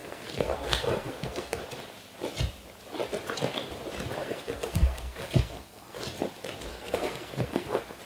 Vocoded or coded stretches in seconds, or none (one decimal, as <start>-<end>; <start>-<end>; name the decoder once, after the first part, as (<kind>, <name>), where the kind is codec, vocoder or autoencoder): 0.0-1.6 (codec, SNAC); 4.2-6.0; 6.7-8.0